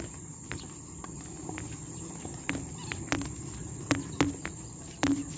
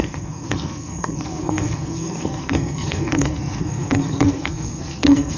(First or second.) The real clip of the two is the first